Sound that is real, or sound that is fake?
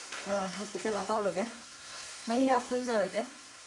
fake